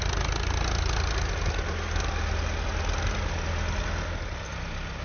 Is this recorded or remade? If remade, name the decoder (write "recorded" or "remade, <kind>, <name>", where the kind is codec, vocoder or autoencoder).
recorded